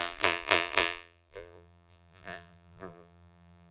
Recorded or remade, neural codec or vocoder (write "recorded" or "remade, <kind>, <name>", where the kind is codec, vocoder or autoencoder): remade, vocoder, BigVGAN v2